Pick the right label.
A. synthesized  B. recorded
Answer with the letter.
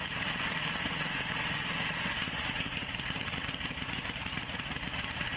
A